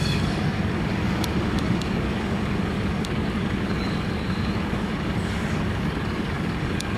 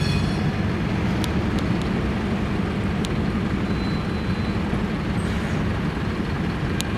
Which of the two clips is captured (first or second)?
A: second